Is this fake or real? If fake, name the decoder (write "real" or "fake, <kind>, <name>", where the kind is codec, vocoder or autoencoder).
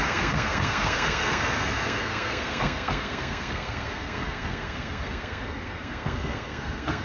fake, codec, SNAC